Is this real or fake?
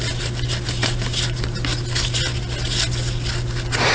real